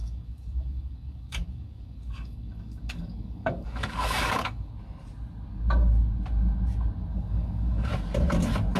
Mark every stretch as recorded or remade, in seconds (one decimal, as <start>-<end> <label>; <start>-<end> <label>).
0.0-4.7 remade; 4.7-7.1 recorded; 7.1-7.9 remade; 7.9-8.8 recorded

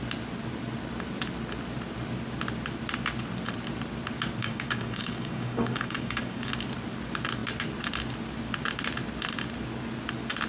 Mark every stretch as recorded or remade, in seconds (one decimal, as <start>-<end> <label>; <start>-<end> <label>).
0.0-4.4 recorded; 4.4-6.5 remade; 6.5-10.5 recorded

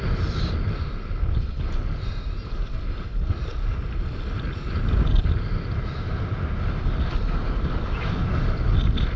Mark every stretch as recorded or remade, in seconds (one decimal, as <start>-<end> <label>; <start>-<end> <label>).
0.0-9.2 recorded

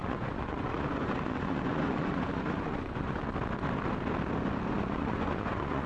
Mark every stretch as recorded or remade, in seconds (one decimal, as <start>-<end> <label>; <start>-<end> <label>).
0.0-3.2 remade; 3.2-4.7 recorded; 4.7-5.9 remade

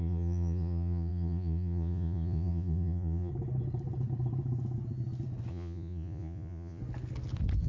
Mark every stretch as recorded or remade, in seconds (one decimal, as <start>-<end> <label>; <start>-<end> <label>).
0.0-3.3 remade; 3.3-5.5 recorded; 5.5-6.8 remade; 6.8-7.7 recorded

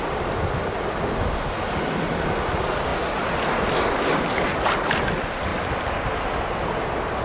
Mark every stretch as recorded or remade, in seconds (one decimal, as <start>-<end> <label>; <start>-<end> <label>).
0.0-7.2 recorded